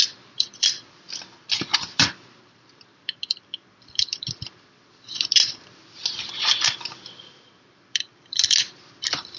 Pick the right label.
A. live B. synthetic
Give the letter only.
B